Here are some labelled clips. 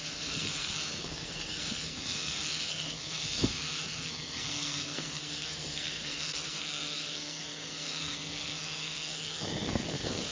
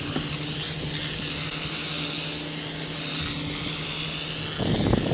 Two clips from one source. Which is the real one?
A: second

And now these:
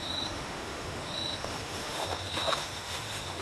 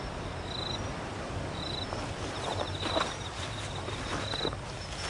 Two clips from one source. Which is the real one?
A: second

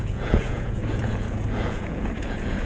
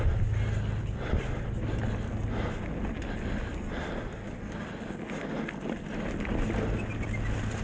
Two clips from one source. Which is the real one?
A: second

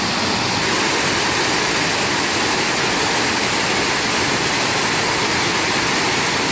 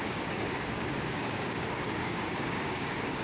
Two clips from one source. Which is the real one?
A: first